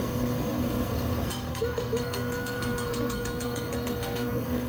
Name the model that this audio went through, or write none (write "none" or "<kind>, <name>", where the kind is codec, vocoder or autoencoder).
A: codec, SNAC